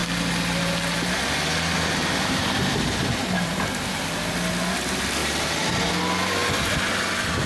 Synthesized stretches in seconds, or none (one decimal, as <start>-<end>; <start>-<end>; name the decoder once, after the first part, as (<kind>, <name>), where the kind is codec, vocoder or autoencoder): none